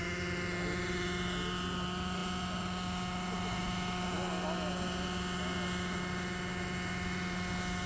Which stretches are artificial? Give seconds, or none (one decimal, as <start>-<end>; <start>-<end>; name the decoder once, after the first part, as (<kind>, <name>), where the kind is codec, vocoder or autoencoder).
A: none